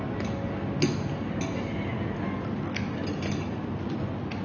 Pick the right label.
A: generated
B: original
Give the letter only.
B